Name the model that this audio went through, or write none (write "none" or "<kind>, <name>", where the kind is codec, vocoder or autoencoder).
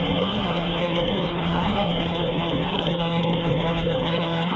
codec, SNAC